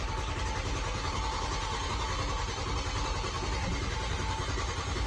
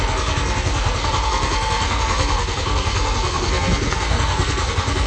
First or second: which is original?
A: first